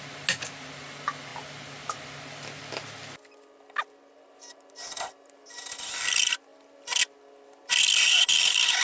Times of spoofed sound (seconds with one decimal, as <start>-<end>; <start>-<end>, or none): none